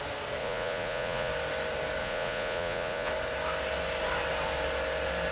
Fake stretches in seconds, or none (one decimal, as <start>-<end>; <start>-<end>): 0.4-1.3; 2.0-3.1